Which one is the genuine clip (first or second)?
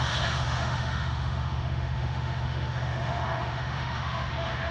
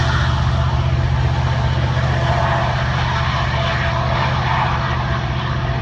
second